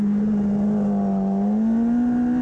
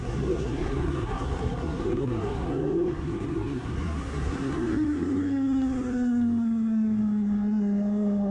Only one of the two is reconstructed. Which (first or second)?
second